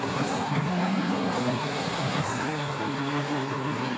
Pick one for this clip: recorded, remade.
remade